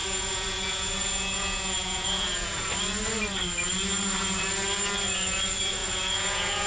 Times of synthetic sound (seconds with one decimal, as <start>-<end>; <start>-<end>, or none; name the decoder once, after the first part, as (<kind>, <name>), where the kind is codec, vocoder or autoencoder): 0.0-2.7 (vocoder, Vocos); 5.8-6.7